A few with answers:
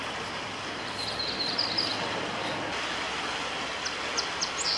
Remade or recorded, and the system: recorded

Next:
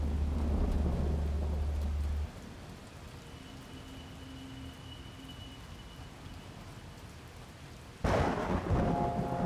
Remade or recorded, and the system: recorded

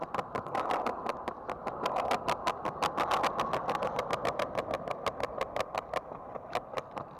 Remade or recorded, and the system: recorded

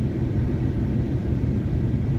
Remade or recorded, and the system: remade, vocoder, BigVGAN v2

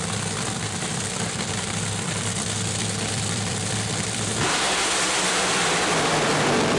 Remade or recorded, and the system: remade, vocoder, BigVGAN v2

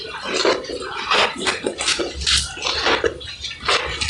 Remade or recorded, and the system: recorded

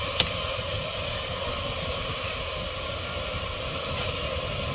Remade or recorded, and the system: recorded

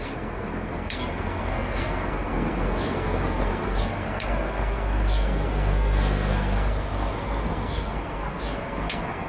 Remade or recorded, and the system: remade, codec, SNAC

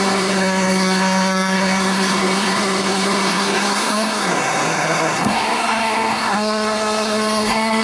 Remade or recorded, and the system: remade, codec, SNAC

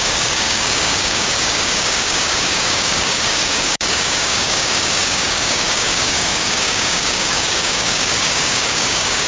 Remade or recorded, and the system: remade, codec, DAC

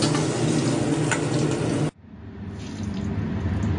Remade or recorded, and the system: recorded